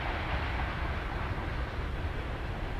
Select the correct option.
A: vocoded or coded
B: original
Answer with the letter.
B